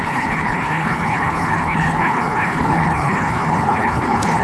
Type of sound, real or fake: fake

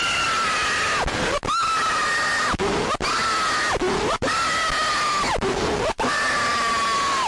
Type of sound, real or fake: real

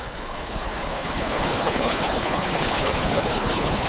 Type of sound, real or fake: fake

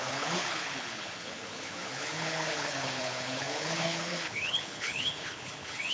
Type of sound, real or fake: fake